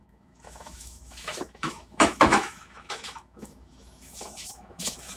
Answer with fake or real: fake